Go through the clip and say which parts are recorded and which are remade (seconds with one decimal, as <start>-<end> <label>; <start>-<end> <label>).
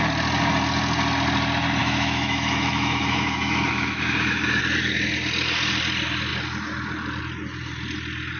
0.0-1.8 recorded; 1.8-4.6 remade; 4.6-8.4 recorded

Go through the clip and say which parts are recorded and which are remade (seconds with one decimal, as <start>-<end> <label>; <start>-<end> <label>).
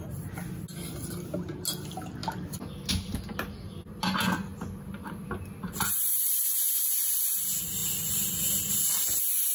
0.0-9.5 recorded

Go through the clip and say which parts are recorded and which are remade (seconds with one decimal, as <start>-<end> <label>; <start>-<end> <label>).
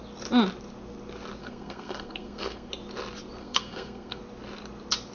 0.0-1.4 recorded; 1.4-2.7 remade; 2.7-3.4 recorded; 3.4-4.2 remade; 4.2-5.1 recorded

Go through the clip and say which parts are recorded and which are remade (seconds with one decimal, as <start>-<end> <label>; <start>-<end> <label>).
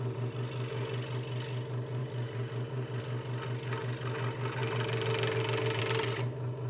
0.0-2.0 recorded; 2.0-3.0 remade; 3.0-6.7 recorded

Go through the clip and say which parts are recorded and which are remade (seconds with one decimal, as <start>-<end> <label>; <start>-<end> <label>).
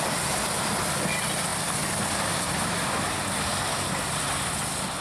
0.0-5.0 recorded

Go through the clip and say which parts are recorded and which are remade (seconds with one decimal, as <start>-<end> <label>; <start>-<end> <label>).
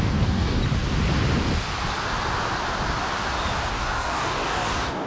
0.0-0.6 remade; 0.6-3.7 recorded; 3.7-5.1 remade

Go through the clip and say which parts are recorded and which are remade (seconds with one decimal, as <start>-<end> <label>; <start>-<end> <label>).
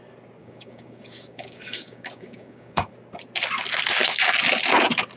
0.0-0.4 recorded; 0.4-2.9 remade; 2.9-5.2 recorded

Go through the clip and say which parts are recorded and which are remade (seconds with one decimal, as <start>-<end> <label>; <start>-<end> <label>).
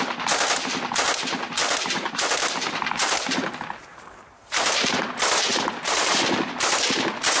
0.0-1.6 recorded; 1.6-3.5 remade; 3.5-3.9 recorded; 3.9-5.1 remade; 5.1-5.5 recorded; 5.5-6.1 remade; 6.1-7.4 recorded